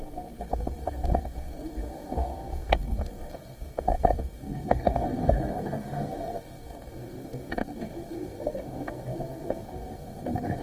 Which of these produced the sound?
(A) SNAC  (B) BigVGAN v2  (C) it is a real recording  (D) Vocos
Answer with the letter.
A